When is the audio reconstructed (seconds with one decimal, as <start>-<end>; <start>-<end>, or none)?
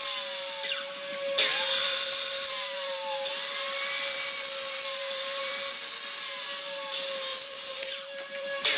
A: 1.8-5.5; 7.3-8.8